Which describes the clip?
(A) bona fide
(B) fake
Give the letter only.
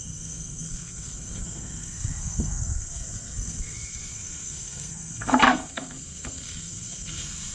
B